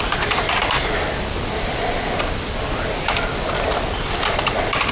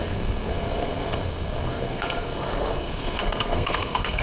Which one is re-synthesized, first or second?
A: second